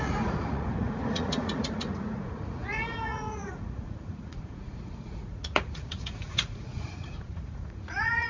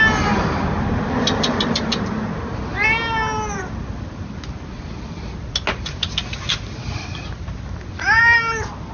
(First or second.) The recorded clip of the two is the second